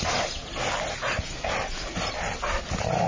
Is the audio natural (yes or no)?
yes